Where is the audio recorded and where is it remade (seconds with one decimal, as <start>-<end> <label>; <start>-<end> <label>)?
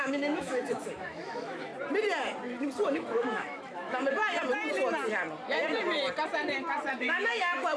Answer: 0.0-1.7 remade; 1.7-2.9 recorded; 2.9-4.2 remade; 4.2-7.0 recorded; 7.0-7.8 remade